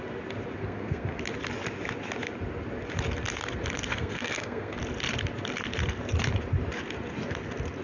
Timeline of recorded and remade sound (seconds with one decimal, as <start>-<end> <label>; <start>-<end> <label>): 0.0-0.6 recorded; 0.6-1.2 remade; 1.2-3.9 recorded; 3.9-4.8 remade; 4.8-7.8 recorded